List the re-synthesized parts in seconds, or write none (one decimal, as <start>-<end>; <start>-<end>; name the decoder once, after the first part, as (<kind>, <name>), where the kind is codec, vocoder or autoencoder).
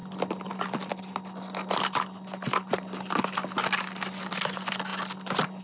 none